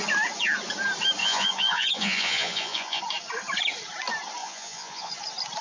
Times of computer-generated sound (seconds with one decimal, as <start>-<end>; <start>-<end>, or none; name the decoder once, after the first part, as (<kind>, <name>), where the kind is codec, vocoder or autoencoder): 1.2-3.0 (vocoder, Vocos); 4.4-5.1